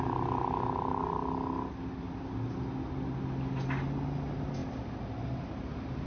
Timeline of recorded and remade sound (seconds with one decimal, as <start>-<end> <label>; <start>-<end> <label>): 0.0-6.1 recorded